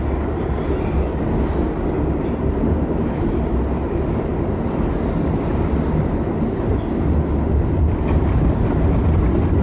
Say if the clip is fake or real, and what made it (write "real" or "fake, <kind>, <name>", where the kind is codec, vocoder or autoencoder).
real